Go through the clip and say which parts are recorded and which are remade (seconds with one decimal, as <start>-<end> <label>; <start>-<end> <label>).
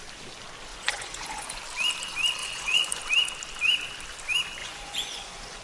0.0-0.7 recorded; 0.7-1.6 remade; 1.6-2.4 recorded; 2.4-3.0 remade; 3.0-4.6 recorded; 4.6-5.6 remade